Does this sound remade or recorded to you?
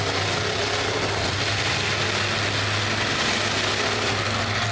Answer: recorded